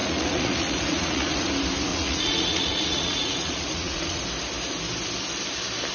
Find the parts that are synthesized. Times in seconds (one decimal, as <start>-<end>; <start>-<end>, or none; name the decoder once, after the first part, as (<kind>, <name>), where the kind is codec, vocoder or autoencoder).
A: 0.0-1.5 (vocoder, Vocos); 1.9-4.2